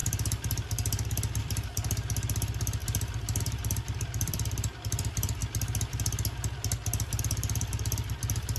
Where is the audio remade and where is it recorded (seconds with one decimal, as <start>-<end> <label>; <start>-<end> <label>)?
0.0-2.8 remade; 2.8-3.4 recorded; 3.4-5.4 remade; 5.4-7.2 recorded; 7.2-8.6 remade